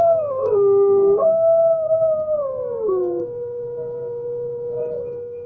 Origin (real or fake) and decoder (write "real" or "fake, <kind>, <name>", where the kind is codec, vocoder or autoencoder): fake, codec, SNAC